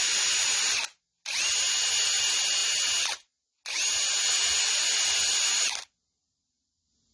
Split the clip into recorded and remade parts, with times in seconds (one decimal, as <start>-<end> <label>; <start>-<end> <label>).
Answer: 0.0-7.1 recorded